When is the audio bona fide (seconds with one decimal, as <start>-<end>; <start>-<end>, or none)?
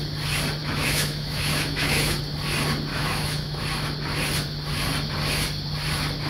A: 0.0-0.6; 2.2-2.9; 3.6-6.3